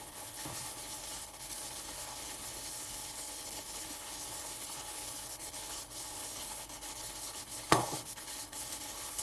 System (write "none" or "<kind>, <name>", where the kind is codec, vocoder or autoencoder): codec, HILCodec